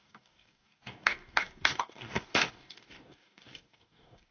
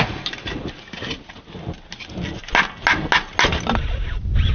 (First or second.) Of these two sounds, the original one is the second